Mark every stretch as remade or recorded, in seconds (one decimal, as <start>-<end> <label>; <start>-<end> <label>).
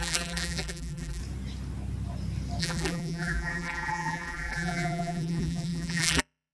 0.0-1.2 remade; 1.2-2.6 recorded; 2.6-6.5 remade